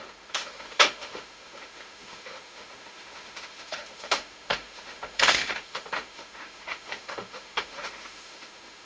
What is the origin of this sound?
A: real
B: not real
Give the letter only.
B